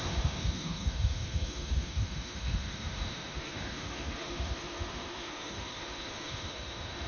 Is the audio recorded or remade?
remade